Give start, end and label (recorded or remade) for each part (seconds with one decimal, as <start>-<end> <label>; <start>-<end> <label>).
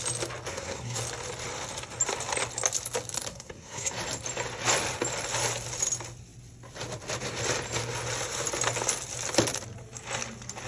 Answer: 0.0-0.5 recorded; 0.5-1.0 remade; 1.0-3.3 recorded; 3.3-3.9 remade; 3.9-10.7 recorded